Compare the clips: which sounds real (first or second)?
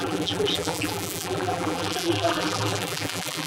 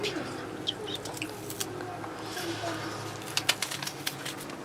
second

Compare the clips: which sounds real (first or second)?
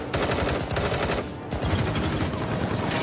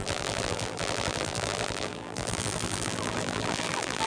first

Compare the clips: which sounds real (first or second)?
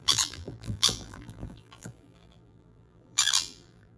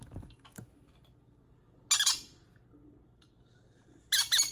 second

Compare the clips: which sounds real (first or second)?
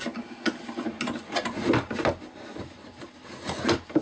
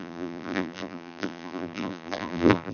first